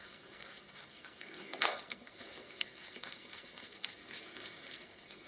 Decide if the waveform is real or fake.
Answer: fake